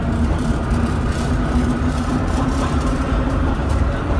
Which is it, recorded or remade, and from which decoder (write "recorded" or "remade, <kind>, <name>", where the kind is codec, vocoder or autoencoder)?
remade, vocoder, BigVGAN v2